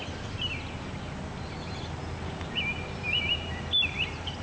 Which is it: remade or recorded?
recorded